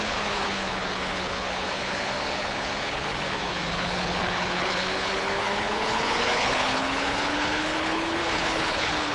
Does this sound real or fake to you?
fake